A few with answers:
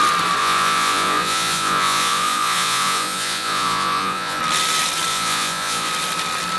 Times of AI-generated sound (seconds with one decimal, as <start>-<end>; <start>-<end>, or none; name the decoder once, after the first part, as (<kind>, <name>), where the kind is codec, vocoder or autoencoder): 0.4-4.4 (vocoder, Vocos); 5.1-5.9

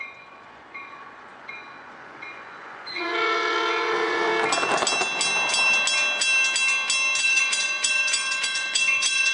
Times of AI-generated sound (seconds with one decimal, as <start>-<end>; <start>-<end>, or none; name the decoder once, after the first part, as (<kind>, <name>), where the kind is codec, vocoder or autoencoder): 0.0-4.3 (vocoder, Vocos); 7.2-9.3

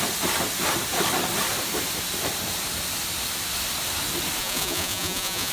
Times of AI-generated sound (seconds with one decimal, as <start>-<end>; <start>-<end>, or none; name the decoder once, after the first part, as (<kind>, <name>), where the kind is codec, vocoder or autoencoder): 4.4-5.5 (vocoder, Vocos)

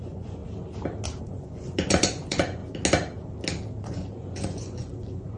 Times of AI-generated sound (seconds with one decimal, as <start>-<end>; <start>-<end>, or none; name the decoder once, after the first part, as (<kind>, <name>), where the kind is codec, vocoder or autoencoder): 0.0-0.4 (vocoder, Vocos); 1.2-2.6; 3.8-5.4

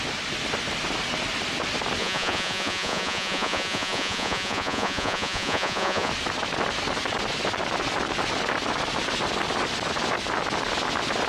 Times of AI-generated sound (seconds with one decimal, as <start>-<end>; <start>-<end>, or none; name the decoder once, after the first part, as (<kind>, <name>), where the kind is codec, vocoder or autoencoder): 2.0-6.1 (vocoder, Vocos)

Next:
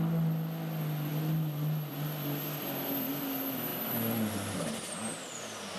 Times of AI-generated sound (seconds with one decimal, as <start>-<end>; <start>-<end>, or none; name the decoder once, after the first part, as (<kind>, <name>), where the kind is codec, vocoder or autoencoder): none